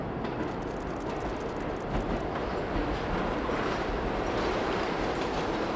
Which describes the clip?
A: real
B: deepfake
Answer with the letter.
A